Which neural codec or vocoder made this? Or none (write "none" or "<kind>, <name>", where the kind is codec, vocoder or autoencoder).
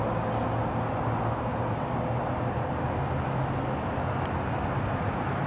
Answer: none